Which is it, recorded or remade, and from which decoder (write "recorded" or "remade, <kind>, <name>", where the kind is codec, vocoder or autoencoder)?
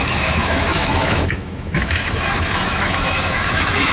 remade, autoencoder, DAC-VAE